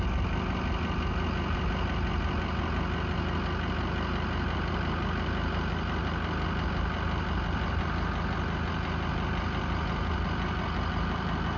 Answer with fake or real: real